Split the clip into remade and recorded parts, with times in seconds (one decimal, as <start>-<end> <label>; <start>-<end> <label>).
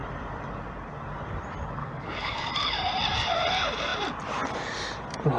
0.0-1.8 recorded; 1.8-2.5 remade; 2.5-5.4 recorded